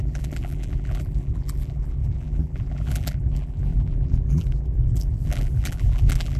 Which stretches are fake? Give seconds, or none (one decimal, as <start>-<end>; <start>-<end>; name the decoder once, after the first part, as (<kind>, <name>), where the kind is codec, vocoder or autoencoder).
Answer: 0.0-6.4 (vocoder, BigVGAN v2)

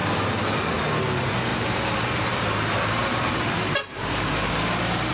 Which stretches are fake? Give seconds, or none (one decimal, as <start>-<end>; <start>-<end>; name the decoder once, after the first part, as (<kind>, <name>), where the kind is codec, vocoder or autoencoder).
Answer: 0.0-0.7 (vocoder, BigVGAN v2); 1.5-3.4; 3.9-5.1

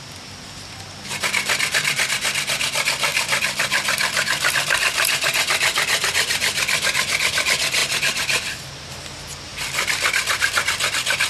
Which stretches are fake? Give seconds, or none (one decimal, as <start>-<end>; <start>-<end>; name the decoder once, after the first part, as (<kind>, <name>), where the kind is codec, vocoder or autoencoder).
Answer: 3.1-4.5 (vocoder, BigVGAN v2); 6.4-7.3; 7.8-8.6; 9.5-10.1

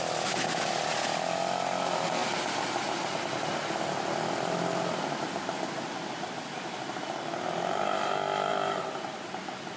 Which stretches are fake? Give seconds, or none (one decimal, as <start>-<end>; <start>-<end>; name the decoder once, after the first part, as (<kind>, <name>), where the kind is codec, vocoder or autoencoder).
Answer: none

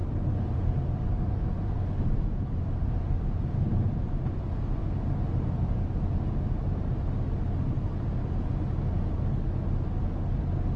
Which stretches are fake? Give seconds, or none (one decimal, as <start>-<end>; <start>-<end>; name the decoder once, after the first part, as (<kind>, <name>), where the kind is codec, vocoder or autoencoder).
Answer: 0.0-4.3 (vocoder, BigVGAN v2)

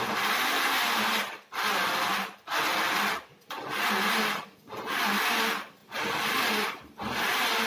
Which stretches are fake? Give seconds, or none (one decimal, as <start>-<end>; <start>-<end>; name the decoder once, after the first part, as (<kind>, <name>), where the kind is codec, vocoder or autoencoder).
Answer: none